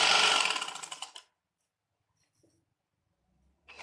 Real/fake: real